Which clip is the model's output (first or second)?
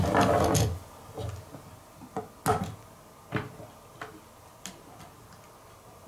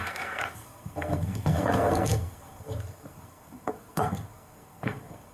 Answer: second